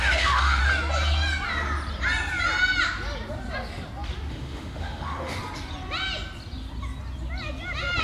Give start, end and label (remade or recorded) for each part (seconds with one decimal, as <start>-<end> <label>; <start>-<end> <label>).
0.0-0.6 remade; 0.6-4.3 recorded; 4.3-5.4 remade; 5.4-8.0 recorded